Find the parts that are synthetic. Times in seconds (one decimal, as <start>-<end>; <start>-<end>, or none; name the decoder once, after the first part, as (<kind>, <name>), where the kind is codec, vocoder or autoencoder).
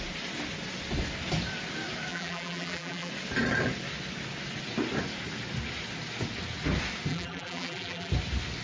2.1-3.1 (vocoder, BigVGAN v2); 7.1-8.1